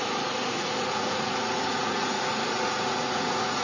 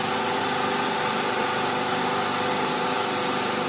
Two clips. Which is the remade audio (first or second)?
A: first